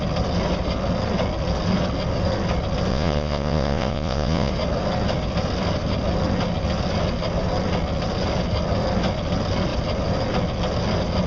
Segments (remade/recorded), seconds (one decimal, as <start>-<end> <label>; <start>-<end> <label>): 0.0-2.9 recorded; 2.9-4.5 remade; 4.5-11.3 recorded